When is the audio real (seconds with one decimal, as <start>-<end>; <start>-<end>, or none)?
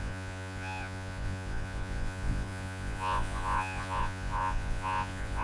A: none